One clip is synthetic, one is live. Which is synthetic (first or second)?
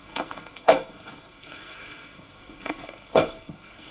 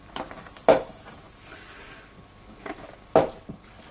first